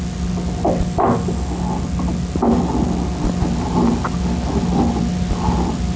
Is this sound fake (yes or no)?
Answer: no